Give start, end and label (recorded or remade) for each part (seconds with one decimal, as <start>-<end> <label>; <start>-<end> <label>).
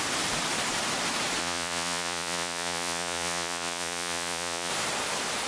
0.0-1.4 recorded; 1.4-4.7 remade; 4.7-5.5 recorded